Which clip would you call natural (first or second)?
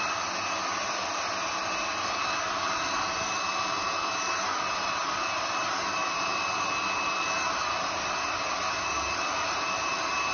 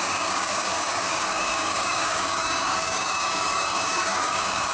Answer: first